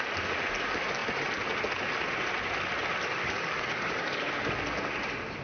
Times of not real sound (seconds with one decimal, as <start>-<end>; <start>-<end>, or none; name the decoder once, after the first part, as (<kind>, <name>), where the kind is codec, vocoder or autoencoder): 3.1-4.3 (codec, DAC)